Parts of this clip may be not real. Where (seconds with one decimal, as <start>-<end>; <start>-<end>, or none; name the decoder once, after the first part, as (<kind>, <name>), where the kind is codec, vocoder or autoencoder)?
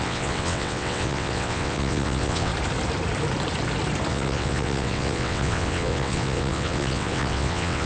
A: 0.0-2.5 (vocoder, WaveNeXt); 4.1-7.9